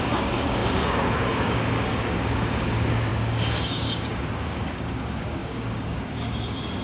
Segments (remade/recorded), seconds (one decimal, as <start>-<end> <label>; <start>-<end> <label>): 0.0-6.8 remade